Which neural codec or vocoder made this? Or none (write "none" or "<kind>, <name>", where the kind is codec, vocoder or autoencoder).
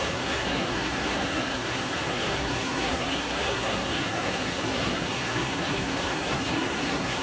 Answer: codec, SNAC